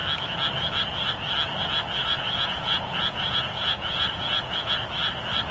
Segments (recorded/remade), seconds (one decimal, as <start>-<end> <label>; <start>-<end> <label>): 0.0-2.0 recorded; 2.0-4.7 remade; 4.7-5.5 recorded